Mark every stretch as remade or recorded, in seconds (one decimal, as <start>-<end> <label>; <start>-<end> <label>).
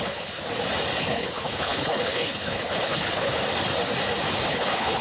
0.0-0.4 remade; 0.4-1.0 recorded; 1.0-3.3 remade; 3.3-4.5 recorded; 4.5-5.0 remade